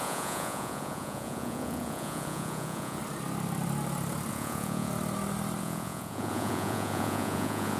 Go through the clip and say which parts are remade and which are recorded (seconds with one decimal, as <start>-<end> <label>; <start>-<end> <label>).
0.0-3.0 remade; 3.0-4.3 recorded; 4.3-4.9 remade; 4.9-5.6 recorded; 5.6-7.8 remade